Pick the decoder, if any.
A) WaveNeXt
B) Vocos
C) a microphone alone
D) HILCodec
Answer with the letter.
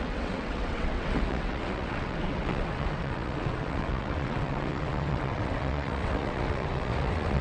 A